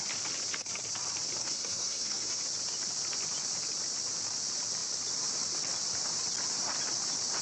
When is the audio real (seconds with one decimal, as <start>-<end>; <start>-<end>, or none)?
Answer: 0.0-1.4; 2.4-7.4